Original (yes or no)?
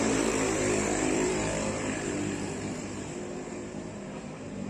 no